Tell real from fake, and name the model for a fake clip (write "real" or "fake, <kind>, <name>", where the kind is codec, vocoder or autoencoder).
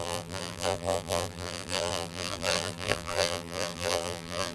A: fake, vocoder, BigVGAN v2